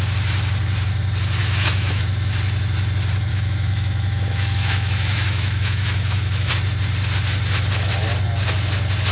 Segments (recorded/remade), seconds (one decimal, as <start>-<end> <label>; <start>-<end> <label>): 0.0-1.4 recorded; 1.4-2.0 remade; 2.0-3.3 recorded; 3.3-6.5 remade; 6.5-9.1 recorded